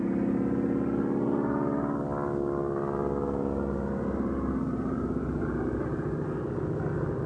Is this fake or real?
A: real